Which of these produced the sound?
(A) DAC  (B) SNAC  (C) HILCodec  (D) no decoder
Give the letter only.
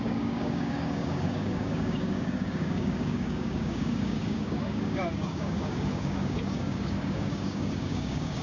A